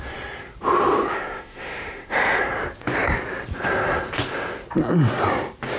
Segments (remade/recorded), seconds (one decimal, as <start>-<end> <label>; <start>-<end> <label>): 0.0-1.1 recorded; 1.1-2.4 remade; 2.4-5.8 recorded